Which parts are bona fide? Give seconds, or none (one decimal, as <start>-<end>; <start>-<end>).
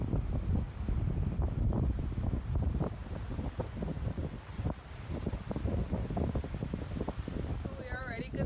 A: 3.0-3.7; 4.2-8.0